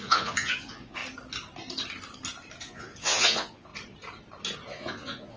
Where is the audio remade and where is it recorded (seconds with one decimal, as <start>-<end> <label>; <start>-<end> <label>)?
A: 0.0-1.0 remade; 1.0-2.6 recorded; 2.6-3.7 remade; 3.7-4.7 recorded; 4.7-5.4 remade